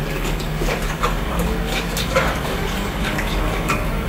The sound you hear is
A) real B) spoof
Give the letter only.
B